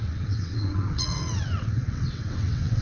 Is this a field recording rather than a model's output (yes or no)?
no